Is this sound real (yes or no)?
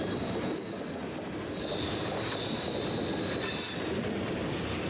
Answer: yes